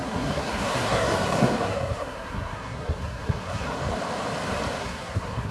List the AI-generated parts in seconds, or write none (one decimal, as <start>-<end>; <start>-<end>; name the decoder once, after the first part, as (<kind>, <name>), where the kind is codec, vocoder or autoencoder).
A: 0.0-3.8 (codec, SNAC); 4.8-5.5